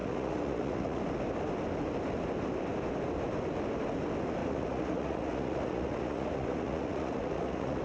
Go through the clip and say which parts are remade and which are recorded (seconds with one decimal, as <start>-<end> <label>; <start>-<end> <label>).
0.0-1.0 remade; 1.0-4.4 recorded; 4.4-7.8 remade